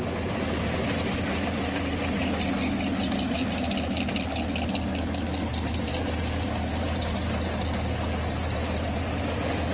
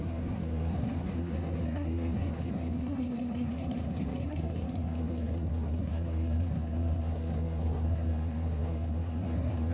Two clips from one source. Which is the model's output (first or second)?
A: second